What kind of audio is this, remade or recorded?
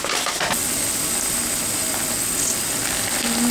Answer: recorded